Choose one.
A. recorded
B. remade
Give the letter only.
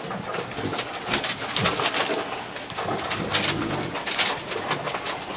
A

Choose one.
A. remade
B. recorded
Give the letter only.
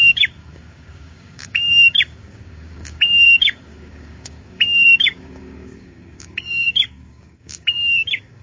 A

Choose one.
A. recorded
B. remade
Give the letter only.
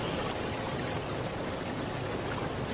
A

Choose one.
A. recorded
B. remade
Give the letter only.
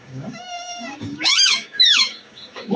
B